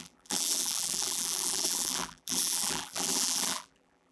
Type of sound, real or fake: fake